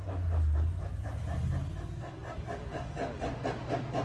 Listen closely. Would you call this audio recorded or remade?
recorded